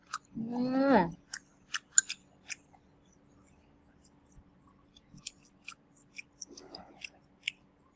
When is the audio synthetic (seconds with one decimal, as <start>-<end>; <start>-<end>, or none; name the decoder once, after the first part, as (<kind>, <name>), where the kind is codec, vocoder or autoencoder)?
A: none